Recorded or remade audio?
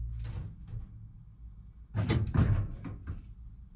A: recorded